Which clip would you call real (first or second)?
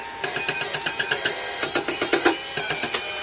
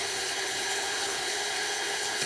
first